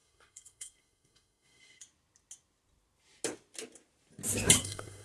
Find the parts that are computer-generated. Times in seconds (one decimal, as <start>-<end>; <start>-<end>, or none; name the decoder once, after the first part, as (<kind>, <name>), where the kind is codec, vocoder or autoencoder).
0.0-1.8 (codec, SNAC); 4.6-5.0